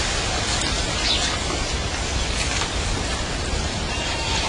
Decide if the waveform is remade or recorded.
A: recorded